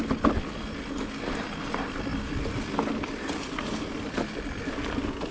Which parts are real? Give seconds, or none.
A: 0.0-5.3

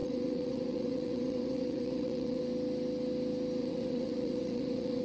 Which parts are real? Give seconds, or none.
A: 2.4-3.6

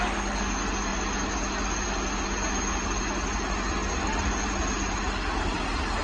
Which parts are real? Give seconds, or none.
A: 0.0-6.0

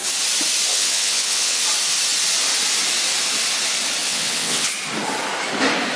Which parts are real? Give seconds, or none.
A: 0.0-0.7; 1.6-4.0; 4.7-6.0

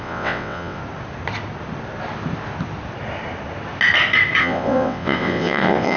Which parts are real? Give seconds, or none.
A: 0.8-4.4

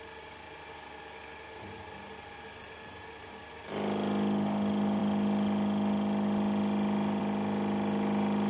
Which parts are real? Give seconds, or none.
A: 0.0-8.5

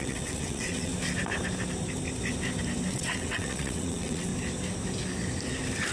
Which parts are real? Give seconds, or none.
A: 0.9-2.9; 4.3-5.9

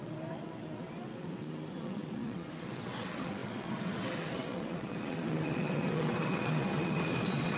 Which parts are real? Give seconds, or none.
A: none